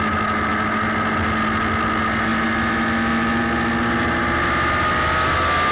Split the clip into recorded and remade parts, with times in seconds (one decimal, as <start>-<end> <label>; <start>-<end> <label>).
0.0-5.7 recorded